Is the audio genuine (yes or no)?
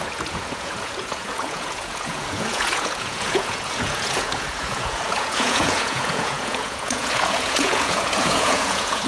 no